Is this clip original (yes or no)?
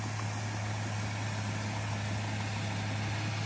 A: yes